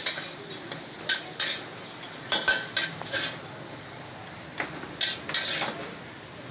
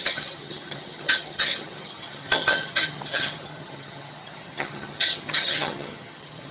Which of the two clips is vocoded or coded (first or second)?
second